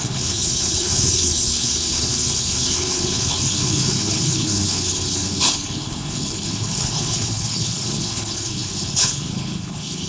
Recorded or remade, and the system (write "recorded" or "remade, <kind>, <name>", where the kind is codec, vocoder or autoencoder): remade, codec, HILCodec